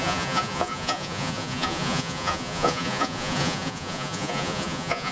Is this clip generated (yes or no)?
yes